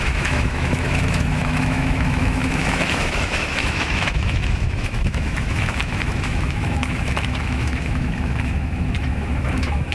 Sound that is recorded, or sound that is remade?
remade